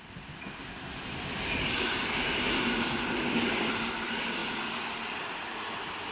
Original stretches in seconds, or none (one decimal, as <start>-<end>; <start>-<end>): 0.0-6.1